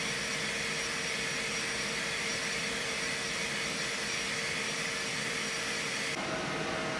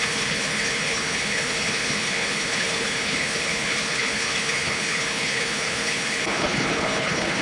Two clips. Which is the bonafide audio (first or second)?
first